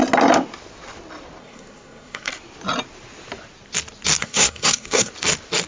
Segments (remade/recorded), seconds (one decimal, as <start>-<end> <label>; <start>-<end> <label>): 0.0-1.4 recorded; 1.4-2.3 remade; 2.3-4.2 recorded; 4.2-5.1 remade; 5.1-5.7 recorded